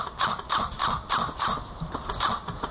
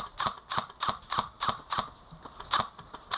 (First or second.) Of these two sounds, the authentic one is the second